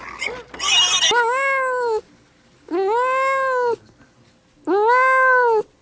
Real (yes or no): yes